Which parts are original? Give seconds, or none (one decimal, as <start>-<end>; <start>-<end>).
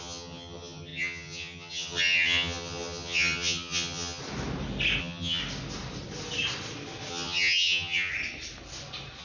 4.2-5.0; 5.4-7.1; 8.1-9.2